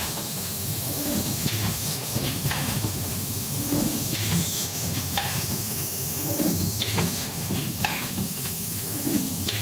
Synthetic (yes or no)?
yes